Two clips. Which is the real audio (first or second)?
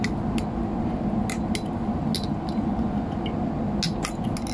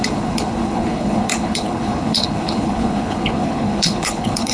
first